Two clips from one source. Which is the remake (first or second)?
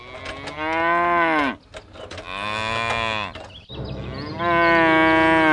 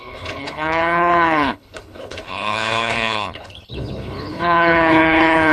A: second